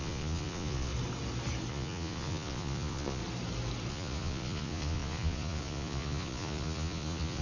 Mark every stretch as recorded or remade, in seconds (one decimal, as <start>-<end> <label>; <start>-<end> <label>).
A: 0.0-0.9 remade; 0.9-1.7 recorded; 1.7-3.2 remade; 3.2-3.9 recorded; 3.9-7.4 remade